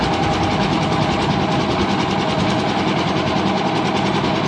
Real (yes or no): yes